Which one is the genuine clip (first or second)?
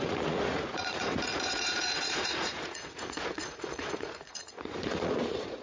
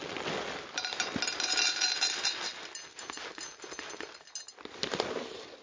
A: second